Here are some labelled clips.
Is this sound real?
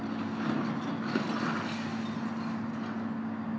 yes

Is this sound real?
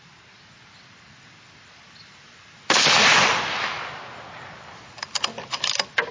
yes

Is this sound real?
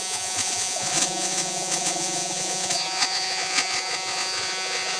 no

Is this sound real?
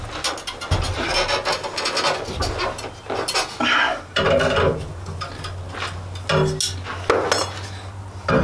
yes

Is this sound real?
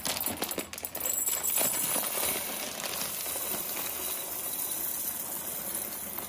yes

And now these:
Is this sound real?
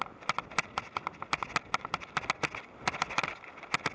yes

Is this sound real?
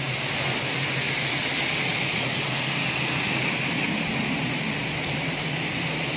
yes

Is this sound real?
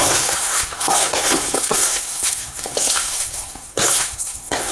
no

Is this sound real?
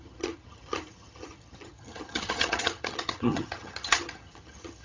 no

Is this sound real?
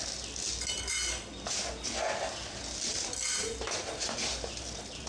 yes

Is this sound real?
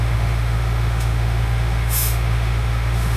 no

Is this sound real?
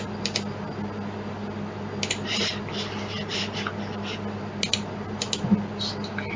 yes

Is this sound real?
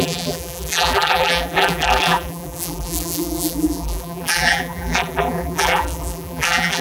no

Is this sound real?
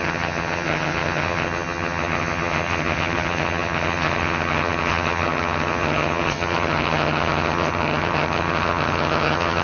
no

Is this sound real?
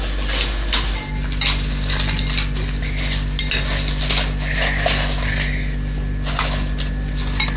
yes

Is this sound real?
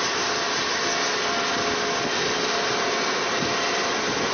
yes